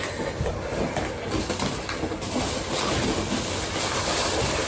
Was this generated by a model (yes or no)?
no